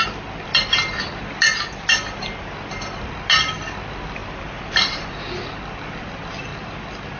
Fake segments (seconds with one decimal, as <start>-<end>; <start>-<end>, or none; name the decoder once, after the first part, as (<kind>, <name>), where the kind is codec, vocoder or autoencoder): none